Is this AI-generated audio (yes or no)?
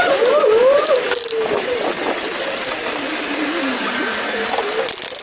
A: no